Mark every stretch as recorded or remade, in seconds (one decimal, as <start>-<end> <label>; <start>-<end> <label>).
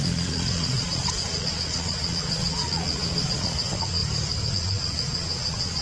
0.0-4.0 remade; 4.0-4.5 recorded; 4.5-5.8 remade